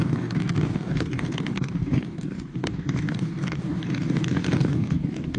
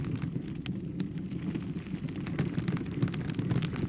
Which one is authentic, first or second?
second